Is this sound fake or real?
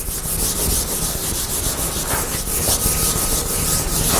real